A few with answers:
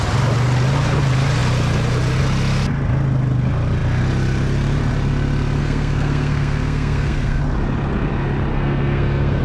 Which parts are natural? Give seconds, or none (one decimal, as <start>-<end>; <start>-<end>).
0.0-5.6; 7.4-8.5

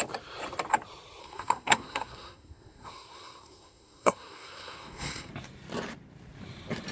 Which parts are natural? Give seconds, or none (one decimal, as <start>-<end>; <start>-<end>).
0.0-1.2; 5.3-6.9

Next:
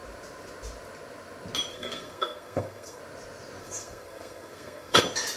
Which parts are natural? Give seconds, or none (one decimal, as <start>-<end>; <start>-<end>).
0.0-1.7; 3.0-3.6; 5.0-5.4